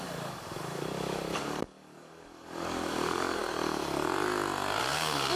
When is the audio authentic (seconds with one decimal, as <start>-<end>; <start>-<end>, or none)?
3.4-4.8